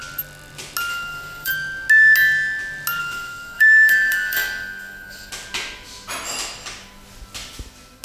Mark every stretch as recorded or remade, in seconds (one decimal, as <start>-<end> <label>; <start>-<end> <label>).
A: 0.0-0.9 recorded; 0.9-1.5 remade; 1.5-3.0 recorded; 3.0-5.3 remade; 5.3-8.0 recorded